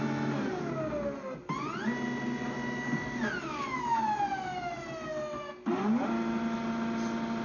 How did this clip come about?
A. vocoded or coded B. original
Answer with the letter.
B